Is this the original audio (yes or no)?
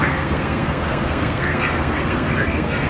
no